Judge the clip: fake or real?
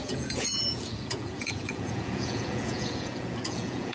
fake